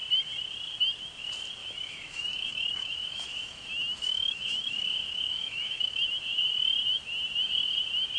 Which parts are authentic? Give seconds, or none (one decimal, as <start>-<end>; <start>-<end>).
0.0-1.6; 6.1-8.2